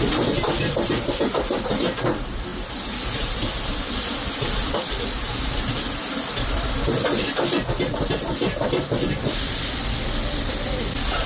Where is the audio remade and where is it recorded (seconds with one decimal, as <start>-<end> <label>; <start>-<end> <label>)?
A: 0.0-11.3 recorded